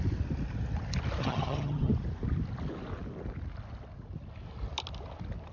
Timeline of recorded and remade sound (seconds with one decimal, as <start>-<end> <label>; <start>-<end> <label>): 0.0-1.2 recorded; 1.2-1.9 remade; 1.9-5.5 recorded